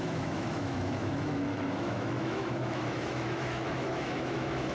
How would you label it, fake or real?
fake